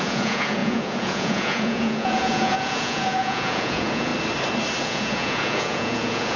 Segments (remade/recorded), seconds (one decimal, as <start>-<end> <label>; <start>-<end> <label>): 0.0-4.1 remade; 4.1-4.8 recorded; 4.8-6.4 remade